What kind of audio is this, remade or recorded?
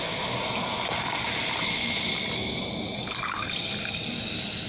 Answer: recorded